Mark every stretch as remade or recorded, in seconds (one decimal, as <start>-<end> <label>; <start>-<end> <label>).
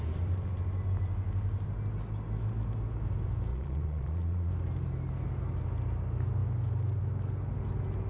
0.0-3.5 recorded; 3.5-4.5 remade; 4.5-8.1 recorded